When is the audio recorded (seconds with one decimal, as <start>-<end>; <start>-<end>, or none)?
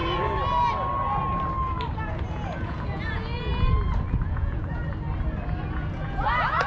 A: 0.0-2.3; 3.5-4.2; 4.8-5.7